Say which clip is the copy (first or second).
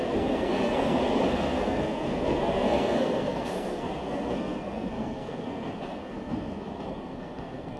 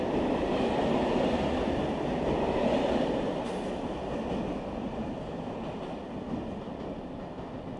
first